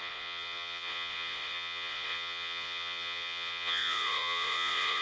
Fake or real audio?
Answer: fake